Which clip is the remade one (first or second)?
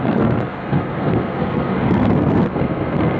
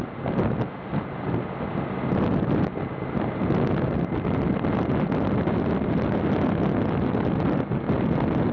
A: first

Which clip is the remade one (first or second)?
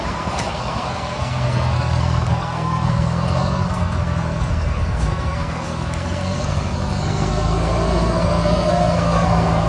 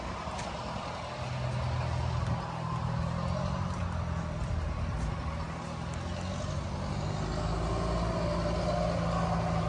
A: first